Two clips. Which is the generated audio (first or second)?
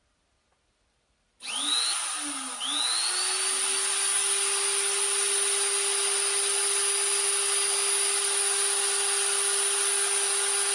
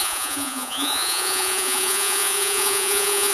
second